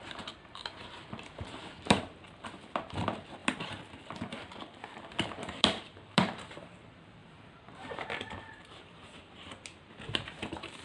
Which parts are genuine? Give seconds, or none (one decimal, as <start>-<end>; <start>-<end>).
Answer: none